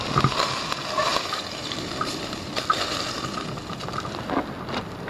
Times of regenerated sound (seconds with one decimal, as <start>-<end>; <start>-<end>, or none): 1.1-4.2